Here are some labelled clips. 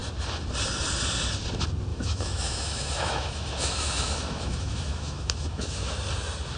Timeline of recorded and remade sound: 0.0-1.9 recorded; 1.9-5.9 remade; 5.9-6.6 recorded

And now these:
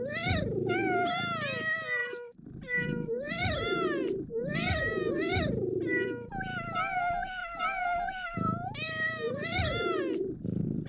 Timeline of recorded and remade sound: 0.0-2.0 recorded; 2.0-5.1 remade; 5.1-7.4 recorded; 7.4-10.0 remade; 10.0-10.9 recorded

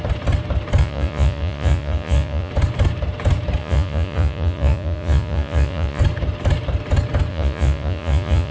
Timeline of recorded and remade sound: 0.0-0.8 recorded; 0.8-2.5 remade; 2.5-3.6 recorded; 3.6-6.0 remade; 6.0-7.3 recorded; 7.3-8.5 remade

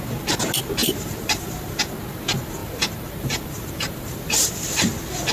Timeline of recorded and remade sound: 0.0-0.8 recorded; 0.8-1.8 remade; 1.8-2.6 recorded; 2.6-4.7 remade; 4.7-5.3 recorded

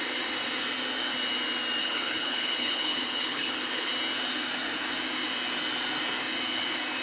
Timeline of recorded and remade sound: 0.0-1.8 recorded; 1.8-3.9 remade; 3.9-7.0 recorded